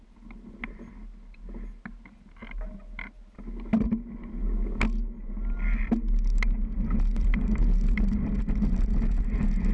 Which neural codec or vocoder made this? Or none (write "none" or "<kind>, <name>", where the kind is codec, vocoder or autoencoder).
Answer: none